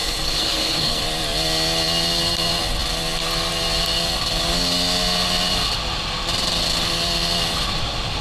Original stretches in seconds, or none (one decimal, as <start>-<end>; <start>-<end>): 1.0-8.2